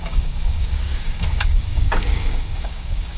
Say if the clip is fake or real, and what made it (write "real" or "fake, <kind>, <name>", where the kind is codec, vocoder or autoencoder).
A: fake, codec, DAC